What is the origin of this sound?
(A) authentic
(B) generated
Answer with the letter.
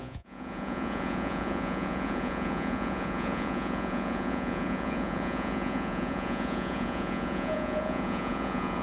B